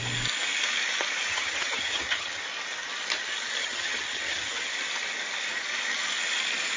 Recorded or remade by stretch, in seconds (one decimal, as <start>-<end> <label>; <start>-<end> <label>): 0.0-1.3 recorded; 1.3-2.4 remade; 2.4-3.6 recorded; 3.6-4.7 remade; 4.7-6.8 recorded